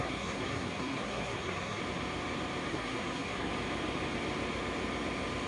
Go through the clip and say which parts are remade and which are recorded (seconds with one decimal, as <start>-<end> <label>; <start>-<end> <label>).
0.0-1.8 remade; 1.8-2.7 recorded; 2.7-3.5 remade; 3.5-5.5 recorded